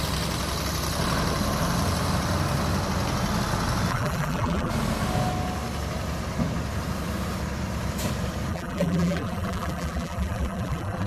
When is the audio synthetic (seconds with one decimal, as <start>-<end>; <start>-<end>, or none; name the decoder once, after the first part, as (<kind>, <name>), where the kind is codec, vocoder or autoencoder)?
3.9-4.7 (vocoder, BigVGAN v2); 8.5-11.1